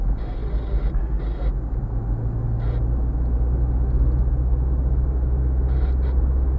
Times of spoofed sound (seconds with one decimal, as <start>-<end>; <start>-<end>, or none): none